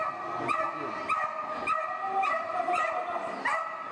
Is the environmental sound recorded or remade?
recorded